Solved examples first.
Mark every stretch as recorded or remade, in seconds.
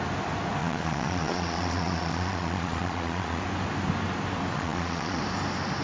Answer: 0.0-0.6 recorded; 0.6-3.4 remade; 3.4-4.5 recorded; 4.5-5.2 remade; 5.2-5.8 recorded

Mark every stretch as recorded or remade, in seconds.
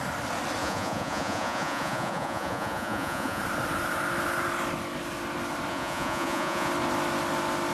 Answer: 0.0-0.6 recorded; 0.6-3.4 remade; 3.4-5.7 recorded; 5.7-6.7 remade; 6.7-7.7 recorded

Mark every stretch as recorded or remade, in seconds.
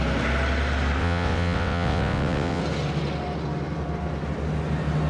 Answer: 0.0-1.0 recorded; 1.0-2.6 remade; 2.6-5.1 recorded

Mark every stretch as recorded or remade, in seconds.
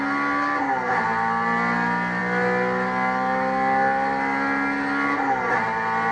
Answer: 0.0-6.1 recorded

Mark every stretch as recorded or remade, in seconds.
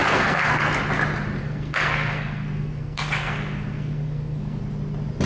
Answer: 0.0-0.7 remade; 0.7-1.4 recorded; 1.4-4.6 remade; 4.6-5.3 recorded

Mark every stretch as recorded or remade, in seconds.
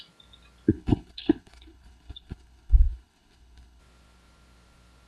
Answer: 0.0-0.7 recorded; 0.7-3.8 remade; 3.8-5.1 recorded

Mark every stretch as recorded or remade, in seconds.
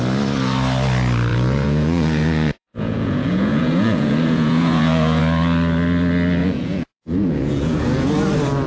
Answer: 0.0-1.3 recorded; 1.3-5.2 remade; 5.2-6.4 recorded; 6.4-8.1 remade; 8.1-8.7 recorded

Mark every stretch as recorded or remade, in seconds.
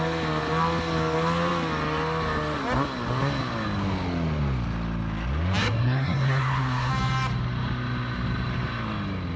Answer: 0.0-5.6 recorded; 5.6-6.9 remade; 6.9-9.4 recorded